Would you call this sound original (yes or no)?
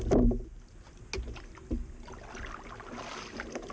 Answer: yes